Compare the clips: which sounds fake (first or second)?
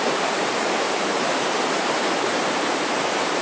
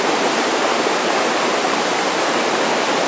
first